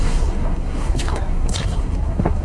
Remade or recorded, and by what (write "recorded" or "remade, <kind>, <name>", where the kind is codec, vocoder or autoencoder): remade, codec, SNAC